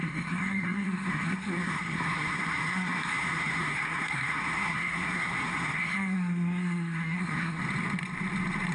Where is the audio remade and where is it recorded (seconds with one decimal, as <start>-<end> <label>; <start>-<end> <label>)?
0.0-7.6 remade; 7.6-8.7 recorded